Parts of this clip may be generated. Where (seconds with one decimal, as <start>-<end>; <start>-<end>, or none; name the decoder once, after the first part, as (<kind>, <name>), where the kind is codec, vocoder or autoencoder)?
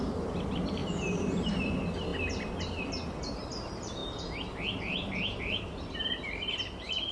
0.8-1.5 (vocoder, BigVGAN v2); 4.0-5.6